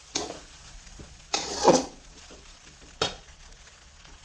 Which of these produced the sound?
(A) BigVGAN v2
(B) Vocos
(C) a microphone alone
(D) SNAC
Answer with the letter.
B